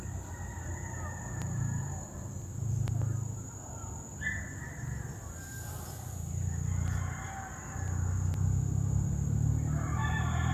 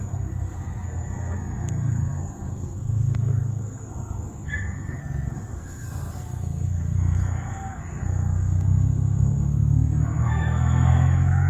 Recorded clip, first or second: first